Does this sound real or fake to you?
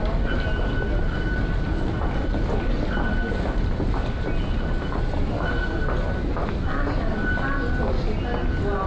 real